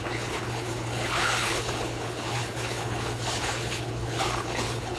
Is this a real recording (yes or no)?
no